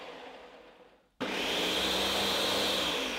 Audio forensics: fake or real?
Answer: real